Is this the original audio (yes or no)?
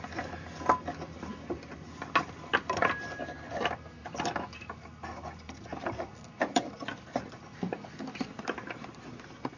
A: yes